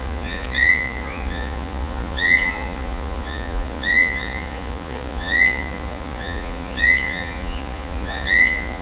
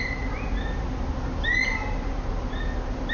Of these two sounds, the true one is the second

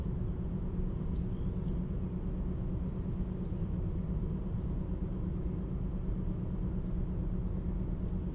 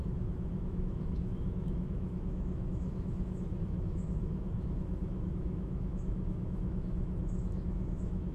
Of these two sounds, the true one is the first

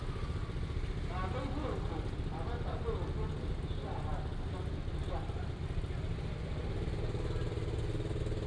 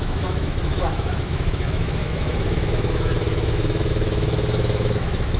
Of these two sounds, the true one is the first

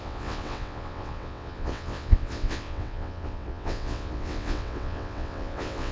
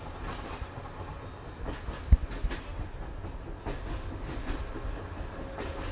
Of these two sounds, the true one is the second